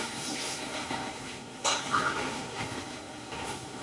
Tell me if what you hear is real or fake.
fake